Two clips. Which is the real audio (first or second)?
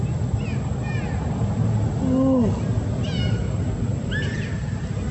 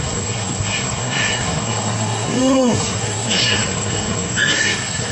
first